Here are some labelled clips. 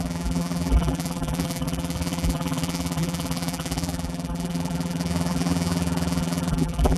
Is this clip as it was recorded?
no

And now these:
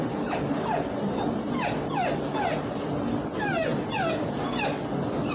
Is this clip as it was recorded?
yes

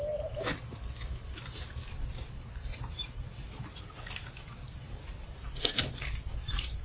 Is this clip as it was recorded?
no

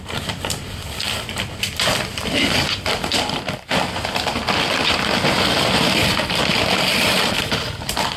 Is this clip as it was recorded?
no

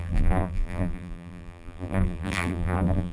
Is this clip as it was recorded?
no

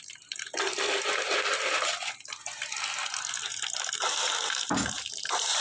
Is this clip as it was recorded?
yes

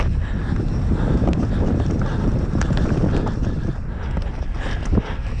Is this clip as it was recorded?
yes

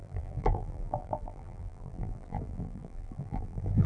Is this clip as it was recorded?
no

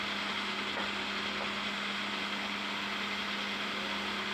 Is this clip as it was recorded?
no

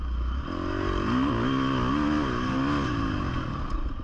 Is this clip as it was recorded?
yes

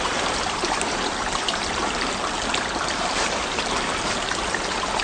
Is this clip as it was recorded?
no